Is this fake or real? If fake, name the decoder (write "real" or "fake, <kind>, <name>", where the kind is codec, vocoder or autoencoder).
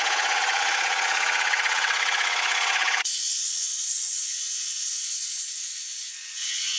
fake, vocoder, WaveNeXt